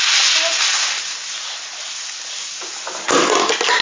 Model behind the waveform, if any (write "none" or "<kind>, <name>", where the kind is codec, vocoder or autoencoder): none